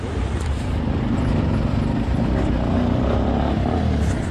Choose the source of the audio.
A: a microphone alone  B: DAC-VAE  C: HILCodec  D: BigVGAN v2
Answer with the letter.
A